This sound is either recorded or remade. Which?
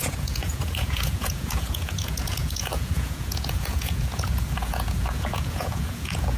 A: remade